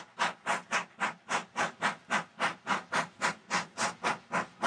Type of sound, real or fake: real